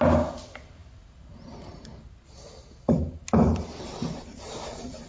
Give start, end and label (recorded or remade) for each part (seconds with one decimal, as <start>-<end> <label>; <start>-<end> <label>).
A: 0.0-5.1 recorded